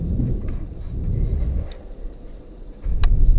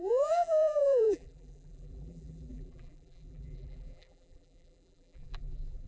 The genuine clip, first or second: first